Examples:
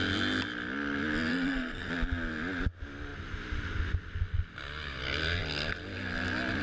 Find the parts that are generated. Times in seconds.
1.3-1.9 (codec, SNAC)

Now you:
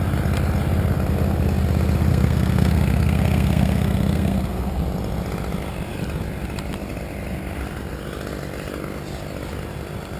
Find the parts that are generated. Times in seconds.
2.1-4.8 (codec, SNAC)

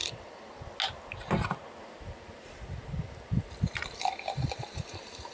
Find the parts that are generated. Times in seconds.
1.1-5.3 (vocoder, BigVGAN v2)